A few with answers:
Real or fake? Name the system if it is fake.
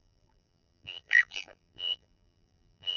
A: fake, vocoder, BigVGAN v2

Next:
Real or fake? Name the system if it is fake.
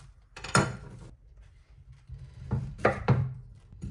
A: fake, vocoder, BigVGAN v2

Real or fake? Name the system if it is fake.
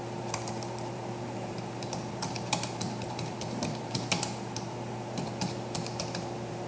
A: fake, vocoder, BigVGAN v2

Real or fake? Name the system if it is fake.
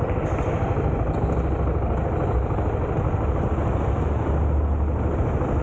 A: real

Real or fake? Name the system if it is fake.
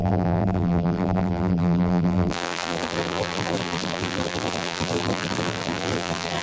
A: fake, vocoder, BigVGAN v2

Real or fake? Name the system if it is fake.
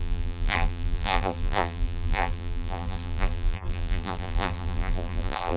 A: fake, vocoder, BigVGAN v2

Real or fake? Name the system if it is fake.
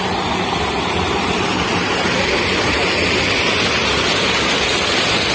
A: real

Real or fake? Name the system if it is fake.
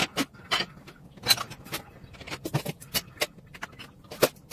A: real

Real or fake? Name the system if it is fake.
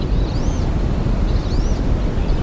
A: real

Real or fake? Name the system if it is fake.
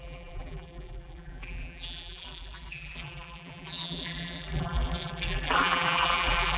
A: fake, vocoder, BigVGAN v2